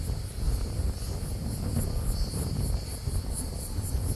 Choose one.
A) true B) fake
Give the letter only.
A